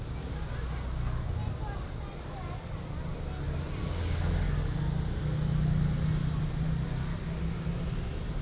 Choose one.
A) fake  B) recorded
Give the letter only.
B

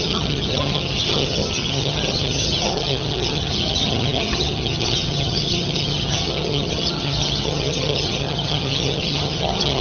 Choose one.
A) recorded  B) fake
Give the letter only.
B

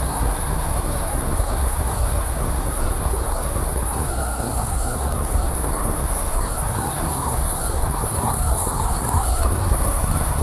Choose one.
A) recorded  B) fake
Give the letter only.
B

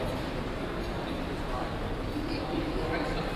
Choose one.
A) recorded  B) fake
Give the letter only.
A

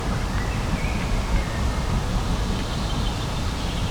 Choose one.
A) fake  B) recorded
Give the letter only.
B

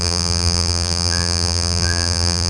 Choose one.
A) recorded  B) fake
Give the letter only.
B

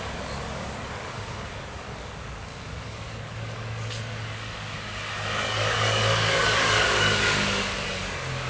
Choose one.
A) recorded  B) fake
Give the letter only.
B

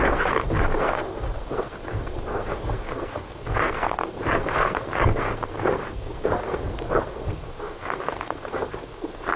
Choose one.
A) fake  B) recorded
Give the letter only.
A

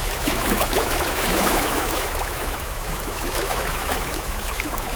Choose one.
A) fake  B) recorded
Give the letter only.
A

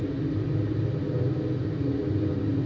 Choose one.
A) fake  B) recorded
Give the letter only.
B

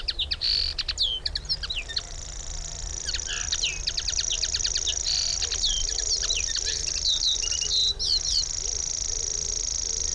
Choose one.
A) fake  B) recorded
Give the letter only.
B